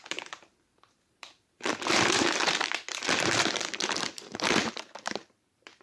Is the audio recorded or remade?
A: remade